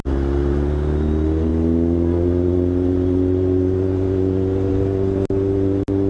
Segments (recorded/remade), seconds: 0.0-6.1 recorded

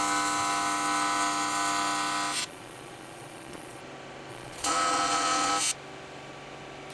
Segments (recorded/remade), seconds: 0.0-2.4 recorded; 2.4-3.8 remade; 3.8-4.3 recorded; 4.3-5.5 remade; 5.5-6.9 recorded

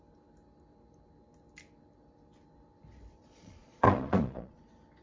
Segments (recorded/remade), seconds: 0.0-3.2 recorded; 3.2-4.6 remade; 4.6-5.0 recorded

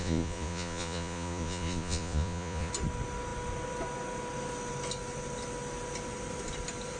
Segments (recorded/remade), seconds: 0.0-2.7 remade; 2.7-7.0 recorded

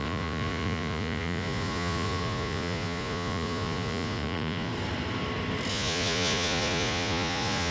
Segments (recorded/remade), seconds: 0.0-4.7 remade; 4.7-5.7 recorded; 5.7-7.7 remade

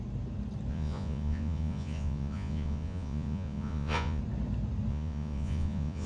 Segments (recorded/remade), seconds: 0.0-0.7 recorded; 0.7-4.2 remade; 4.2-4.9 recorded; 4.9-6.1 remade

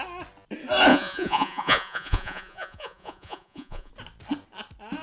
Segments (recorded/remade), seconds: 0.0-0.9 recorded; 0.9-3.9 remade; 3.9-5.0 recorded